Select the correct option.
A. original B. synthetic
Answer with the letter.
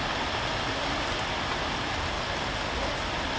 A